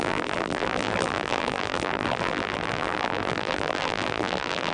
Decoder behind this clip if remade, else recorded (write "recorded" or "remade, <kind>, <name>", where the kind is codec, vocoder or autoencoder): remade, vocoder, BigVGAN v2